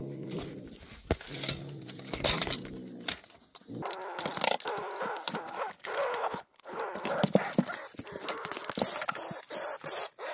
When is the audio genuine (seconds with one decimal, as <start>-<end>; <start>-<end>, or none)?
0.0-6.2; 6.8-10.3